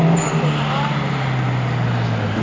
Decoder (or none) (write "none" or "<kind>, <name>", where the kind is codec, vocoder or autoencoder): none